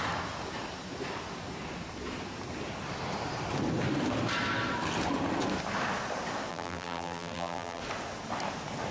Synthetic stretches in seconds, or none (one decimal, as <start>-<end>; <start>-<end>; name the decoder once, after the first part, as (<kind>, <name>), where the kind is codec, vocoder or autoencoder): 6.5-7.8 (vocoder, BigVGAN v2)